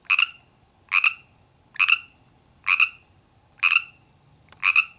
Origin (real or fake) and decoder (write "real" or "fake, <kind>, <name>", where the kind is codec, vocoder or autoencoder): real